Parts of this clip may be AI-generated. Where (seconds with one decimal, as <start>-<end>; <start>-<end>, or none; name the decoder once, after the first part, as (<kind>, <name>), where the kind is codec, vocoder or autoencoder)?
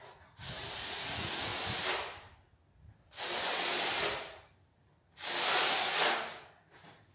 0.0-1.5 (vocoder, Vocos); 5.8-7.1